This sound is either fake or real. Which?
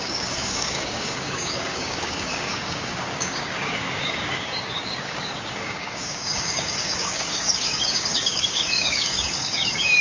fake